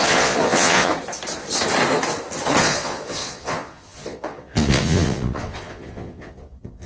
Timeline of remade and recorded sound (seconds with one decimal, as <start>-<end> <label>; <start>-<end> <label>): 0.0-0.9 remade; 0.9-2.6 recorded; 2.6-6.9 remade